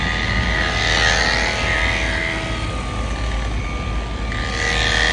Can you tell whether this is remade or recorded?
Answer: recorded